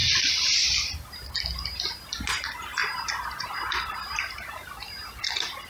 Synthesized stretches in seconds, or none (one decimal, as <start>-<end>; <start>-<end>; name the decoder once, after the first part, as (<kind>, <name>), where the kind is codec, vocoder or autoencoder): 0.0-1.3 (vocoder, BigVGAN v2); 2.8-5.7

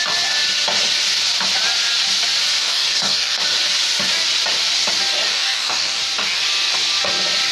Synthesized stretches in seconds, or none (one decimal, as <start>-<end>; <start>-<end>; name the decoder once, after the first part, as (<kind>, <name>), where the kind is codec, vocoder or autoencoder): 2.6-3.4 (codec, DAC); 5.3-6.0

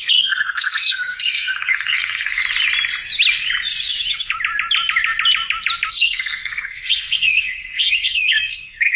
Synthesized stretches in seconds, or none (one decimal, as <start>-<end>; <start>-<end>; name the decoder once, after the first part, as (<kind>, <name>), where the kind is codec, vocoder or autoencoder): 0.0-2.4 (codec, SNAC); 5.9-9.0

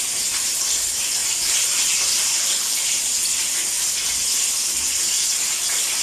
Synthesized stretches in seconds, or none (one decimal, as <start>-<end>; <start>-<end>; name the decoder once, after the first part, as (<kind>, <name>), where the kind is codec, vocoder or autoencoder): 1.2-3.9 (vocoder, BigVGAN v2); 4.8-6.0

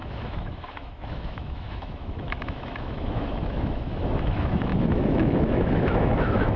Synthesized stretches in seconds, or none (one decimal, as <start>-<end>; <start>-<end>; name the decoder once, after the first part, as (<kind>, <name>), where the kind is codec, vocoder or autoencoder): 0.0-6.6 (autoencoder, DAC-VAE)

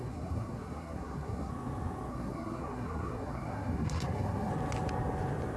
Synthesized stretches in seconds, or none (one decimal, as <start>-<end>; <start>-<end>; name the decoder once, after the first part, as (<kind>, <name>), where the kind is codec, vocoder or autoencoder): 0.0-1.5 (codec, SNAC); 2.1-4.5

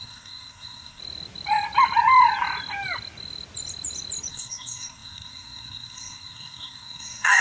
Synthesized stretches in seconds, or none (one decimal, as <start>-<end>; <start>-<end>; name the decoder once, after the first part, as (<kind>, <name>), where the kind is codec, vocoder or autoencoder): 0.0-1.0 (codec, SNAC); 4.3-7.4

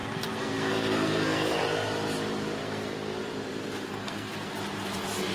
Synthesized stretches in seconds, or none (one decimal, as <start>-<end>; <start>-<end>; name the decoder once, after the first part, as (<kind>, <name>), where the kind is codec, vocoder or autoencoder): 0.0-1.6 (codec, SNAC); 2.6-3.2; 3.9-4.5